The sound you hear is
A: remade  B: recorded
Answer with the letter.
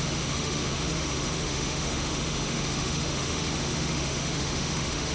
A